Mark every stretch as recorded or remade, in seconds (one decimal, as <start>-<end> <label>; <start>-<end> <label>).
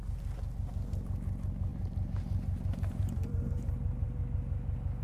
0.0-1.7 recorded; 1.7-4.2 remade; 4.2-5.0 recorded